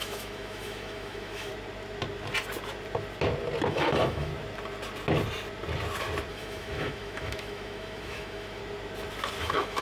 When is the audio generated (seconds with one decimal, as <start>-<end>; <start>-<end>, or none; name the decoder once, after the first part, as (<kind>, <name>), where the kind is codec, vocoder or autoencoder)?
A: 0.0-1.5 (autoencoder, DAC-VAE); 3.7-4.3; 6.3-8.6; 9.4-9.8